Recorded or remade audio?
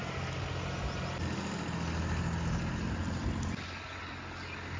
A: recorded